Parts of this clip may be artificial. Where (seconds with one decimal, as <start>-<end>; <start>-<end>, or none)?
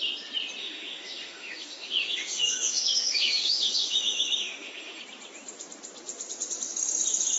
0.6-5.0